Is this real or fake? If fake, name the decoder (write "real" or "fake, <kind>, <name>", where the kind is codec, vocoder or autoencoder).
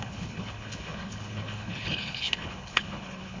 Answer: fake, codec, HILCodec